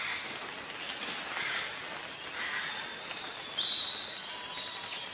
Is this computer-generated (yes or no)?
no